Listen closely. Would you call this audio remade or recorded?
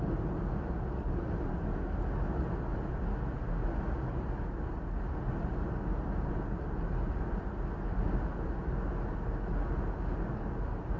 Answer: recorded